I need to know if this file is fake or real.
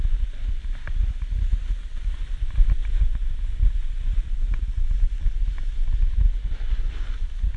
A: real